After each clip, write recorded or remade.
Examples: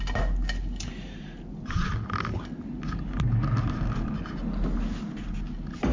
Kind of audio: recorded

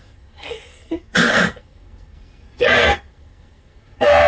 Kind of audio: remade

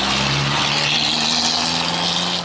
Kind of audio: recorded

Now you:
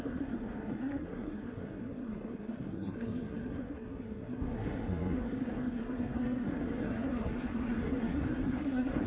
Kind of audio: remade